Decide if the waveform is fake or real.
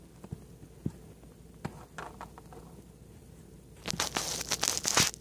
real